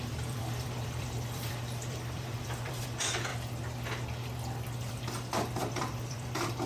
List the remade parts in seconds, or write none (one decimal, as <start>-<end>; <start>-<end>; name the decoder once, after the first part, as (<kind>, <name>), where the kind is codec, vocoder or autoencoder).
0.0-3.3 (vocoder, BigVGAN v2); 4.9-6.7